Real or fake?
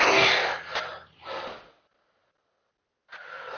real